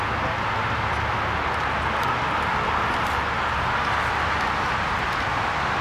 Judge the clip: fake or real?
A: real